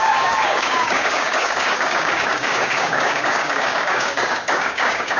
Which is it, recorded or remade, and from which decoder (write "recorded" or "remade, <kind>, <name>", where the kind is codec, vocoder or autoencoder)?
remade, codec, DAC